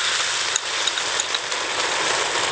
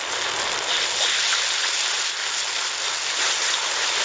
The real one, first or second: second